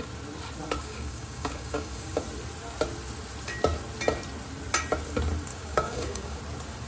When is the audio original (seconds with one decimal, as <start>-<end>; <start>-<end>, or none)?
0.0-0.8; 2.2-5.5; 6.4-6.9